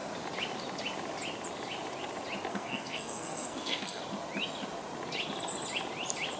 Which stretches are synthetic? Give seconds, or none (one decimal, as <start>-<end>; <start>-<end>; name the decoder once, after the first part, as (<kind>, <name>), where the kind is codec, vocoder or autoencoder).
2.5-4.0 (codec, SNAC)